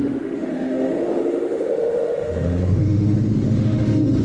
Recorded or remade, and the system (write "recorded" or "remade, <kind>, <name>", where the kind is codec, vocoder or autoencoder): remade, autoencoder, DAC-VAE